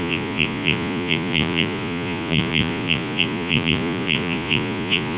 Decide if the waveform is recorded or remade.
remade